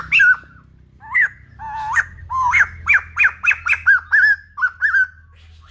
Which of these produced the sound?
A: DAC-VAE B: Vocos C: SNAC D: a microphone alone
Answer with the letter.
D